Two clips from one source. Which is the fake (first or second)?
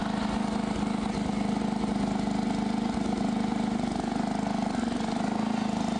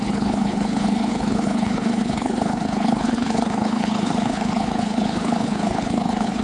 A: second